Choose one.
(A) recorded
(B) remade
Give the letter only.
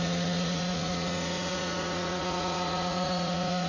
B